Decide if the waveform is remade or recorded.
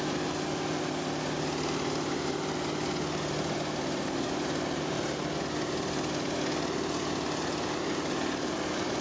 recorded